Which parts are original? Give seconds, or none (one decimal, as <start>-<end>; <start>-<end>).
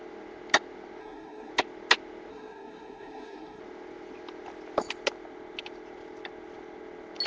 0.0-1.0; 1.5-2.3; 3.6-7.3